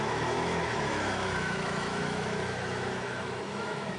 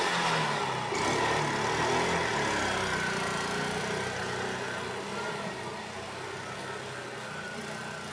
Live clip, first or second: second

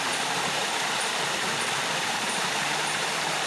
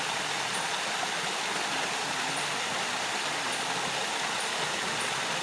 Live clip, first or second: second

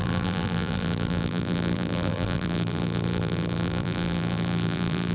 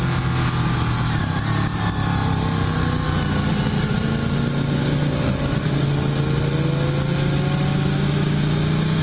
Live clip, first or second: second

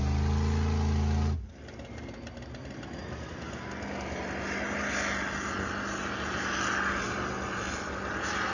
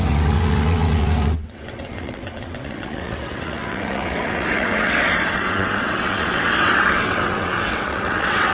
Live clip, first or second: first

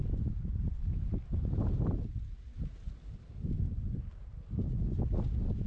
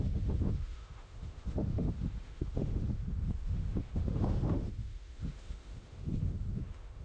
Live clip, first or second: first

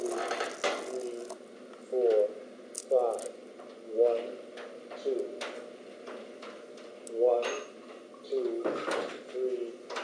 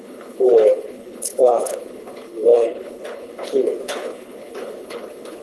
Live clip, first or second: first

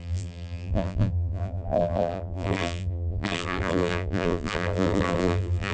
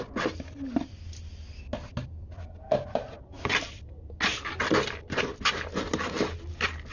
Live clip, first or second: second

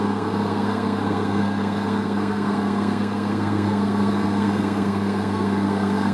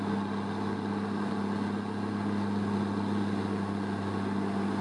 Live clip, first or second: second